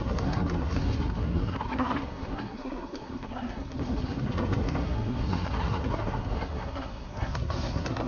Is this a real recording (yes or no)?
no